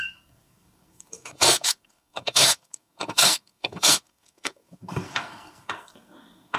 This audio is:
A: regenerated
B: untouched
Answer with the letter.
A